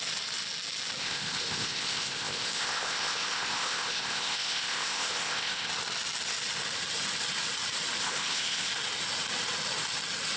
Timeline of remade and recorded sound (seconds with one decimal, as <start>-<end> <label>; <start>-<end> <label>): 0.0-1.0 recorded; 1.0-5.7 remade; 5.7-8.0 recorded; 8.0-8.7 remade; 8.7-10.4 recorded